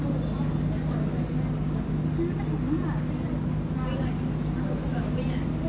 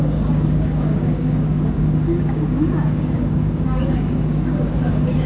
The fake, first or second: second